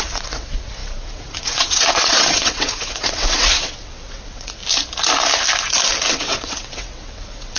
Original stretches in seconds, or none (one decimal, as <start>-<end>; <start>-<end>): 4.6-6.1